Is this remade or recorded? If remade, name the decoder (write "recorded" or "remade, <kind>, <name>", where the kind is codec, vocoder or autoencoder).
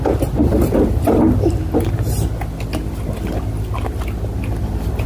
recorded